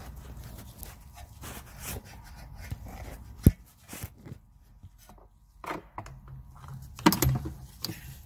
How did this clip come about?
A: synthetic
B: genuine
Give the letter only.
B